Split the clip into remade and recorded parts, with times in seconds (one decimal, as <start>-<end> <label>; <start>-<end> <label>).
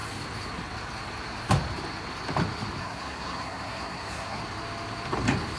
0.0-2.8 recorded; 2.8-4.4 remade; 4.4-5.6 recorded